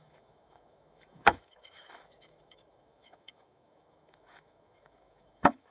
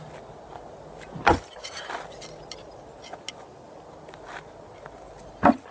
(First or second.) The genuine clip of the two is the second